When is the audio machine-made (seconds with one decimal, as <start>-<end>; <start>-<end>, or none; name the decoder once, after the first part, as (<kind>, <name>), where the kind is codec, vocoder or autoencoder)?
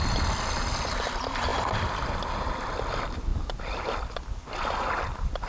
1.5-2.8 (vocoder, BigVGAN v2)